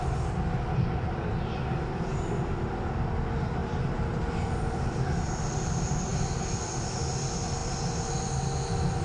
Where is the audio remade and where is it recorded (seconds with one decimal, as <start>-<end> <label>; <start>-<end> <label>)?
0.0-3.6 recorded; 3.6-5.1 remade; 5.1-9.0 recorded